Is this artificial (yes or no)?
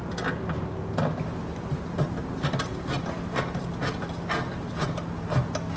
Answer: no